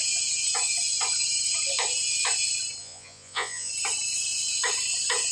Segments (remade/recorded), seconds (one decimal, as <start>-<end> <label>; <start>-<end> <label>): 0.0-2.8 recorded; 2.8-3.7 remade; 3.7-5.3 recorded